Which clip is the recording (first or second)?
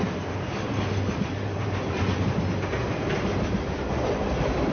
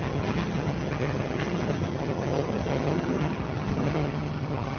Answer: first